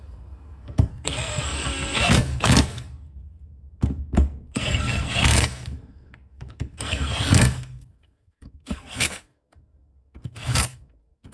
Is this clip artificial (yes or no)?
yes